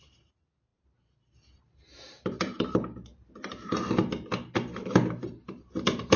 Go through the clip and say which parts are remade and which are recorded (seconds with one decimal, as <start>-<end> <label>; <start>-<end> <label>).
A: 0.0-0.7 recorded; 0.7-3.9 remade; 3.9-4.8 recorded; 4.8-6.2 remade